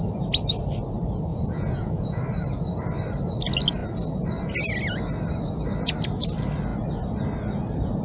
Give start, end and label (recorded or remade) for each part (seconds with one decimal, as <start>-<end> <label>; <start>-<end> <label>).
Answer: 0.0-1.3 recorded; 1.3-2.2 remade; 2.2-8.0 recorded